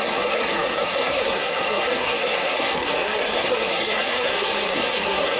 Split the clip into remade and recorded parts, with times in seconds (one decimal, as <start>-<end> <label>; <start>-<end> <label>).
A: 0.0-5.4 remade

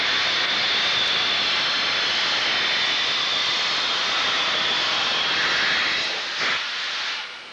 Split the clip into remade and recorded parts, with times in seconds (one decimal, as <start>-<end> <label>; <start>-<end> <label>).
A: 0.0-7.5 recorded

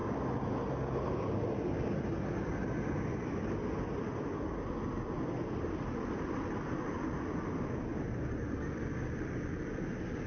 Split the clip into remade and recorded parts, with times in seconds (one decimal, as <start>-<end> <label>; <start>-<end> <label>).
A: 0.0-10.3 recorded

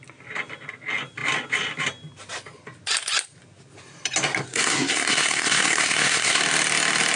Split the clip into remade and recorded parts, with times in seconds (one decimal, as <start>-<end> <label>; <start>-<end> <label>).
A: 0.0-4.5 recorded; 4.5-6.4 remade; 6.4-7.2 recorded

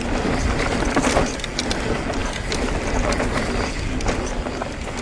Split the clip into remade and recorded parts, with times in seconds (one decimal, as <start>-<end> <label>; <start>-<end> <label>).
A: 0.0-5.0 recorded